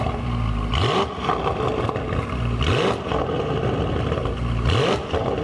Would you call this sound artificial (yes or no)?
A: no